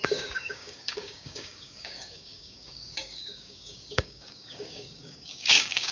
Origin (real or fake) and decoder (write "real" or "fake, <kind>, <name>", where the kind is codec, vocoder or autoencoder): fake, codec, DAC